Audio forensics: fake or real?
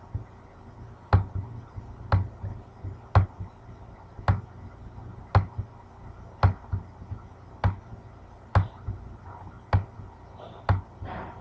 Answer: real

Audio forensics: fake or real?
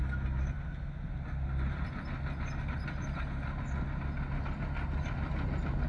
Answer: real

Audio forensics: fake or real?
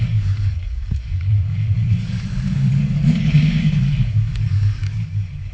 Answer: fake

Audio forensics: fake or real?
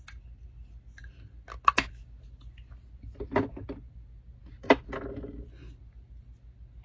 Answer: real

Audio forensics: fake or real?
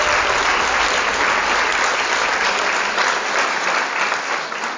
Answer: real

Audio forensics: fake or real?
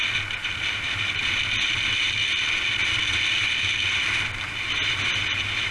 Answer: real